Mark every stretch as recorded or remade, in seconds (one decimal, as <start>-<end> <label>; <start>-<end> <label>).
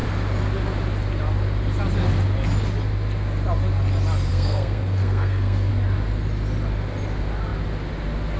0.0-4.3 recorded; 4.3-5.7 remade; 5.7-8.4 recorded